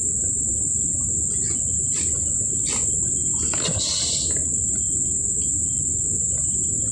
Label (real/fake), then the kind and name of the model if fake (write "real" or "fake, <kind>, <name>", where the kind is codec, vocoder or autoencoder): real